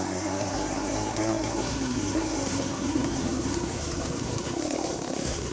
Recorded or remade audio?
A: remade